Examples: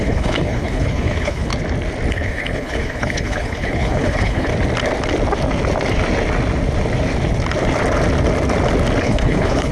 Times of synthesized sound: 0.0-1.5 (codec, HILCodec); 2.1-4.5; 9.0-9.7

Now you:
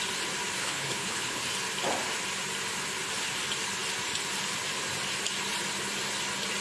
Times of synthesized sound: 0.6-1.4 (codec, HILCodec)

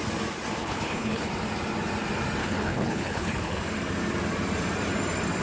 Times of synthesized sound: 0.6-1.3 (codec, HILCodec); 2.4-3.6

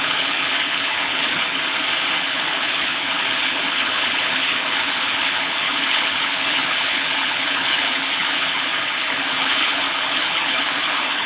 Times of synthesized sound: 0.0-1.6 (codec, HILCodec); 2.2-11.3

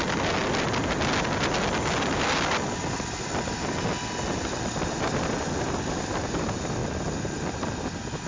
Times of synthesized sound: none

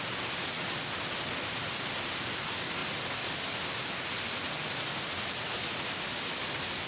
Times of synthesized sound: none